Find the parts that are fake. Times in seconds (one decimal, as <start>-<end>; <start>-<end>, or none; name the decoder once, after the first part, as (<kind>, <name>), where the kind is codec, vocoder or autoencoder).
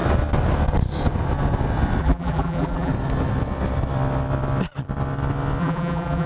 2.0-2.9 (vocoder, BigVGAN v2); 5.6-6.3